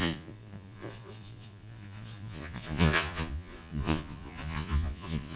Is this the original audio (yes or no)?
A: no